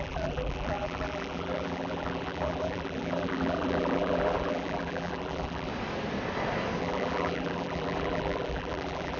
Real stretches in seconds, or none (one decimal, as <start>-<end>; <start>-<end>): 5.7-6.8